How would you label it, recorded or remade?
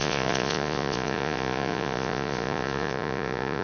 remade